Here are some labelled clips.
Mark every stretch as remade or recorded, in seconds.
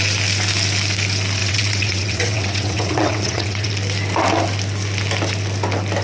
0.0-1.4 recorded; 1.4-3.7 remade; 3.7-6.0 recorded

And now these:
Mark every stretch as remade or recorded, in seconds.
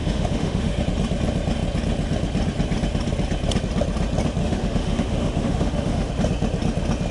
0.0-0.8 remade; 0.8-4.4 recorded; 4.4-6.1 remade; 6.1-7.1 recorded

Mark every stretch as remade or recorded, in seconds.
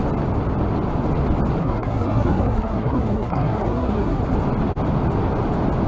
0.0-1.6 recorded; 1.6-4.2 remade; 4.2-5.9 recorded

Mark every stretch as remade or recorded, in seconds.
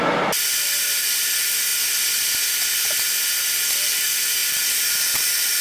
0.0-5.6 recorded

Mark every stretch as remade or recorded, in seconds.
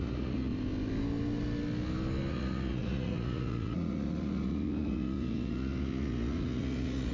0.0-0.5 remade; 0.5-2.3 recorded; 2.3-7.1 remade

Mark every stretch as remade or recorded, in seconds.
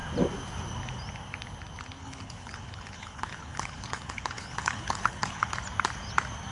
0.0-2.0 recorded; 2.0-5.5 remade; 5.5-6.5 recorded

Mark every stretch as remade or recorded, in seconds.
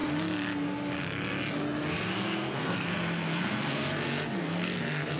0.0-1.9 recorded; 1.9-3.9 remade; 3.9-4.4 recorded; 4.4-5.2 remade